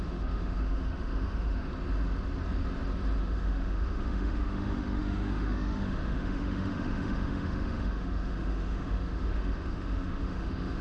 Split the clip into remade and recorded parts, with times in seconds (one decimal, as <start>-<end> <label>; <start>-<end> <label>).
0.0-1.7 remade; 1.7-3.2 recorded; 3.2-10.8 remade